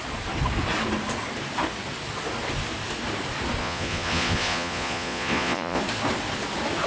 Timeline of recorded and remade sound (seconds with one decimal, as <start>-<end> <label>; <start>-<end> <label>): 0.0-3.6 recorded; 3.6-5.8 remade; 5.8-6.9 recorded